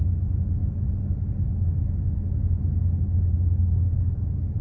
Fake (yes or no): no